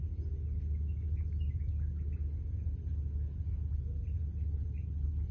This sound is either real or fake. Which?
real